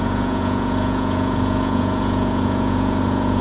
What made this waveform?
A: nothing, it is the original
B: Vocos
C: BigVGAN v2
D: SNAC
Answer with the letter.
B